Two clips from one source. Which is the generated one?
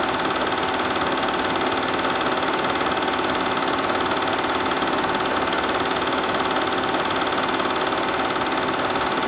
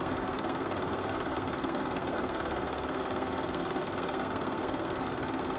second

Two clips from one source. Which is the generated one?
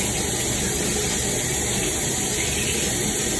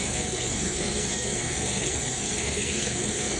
second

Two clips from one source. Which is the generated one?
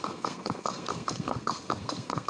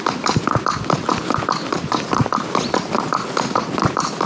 first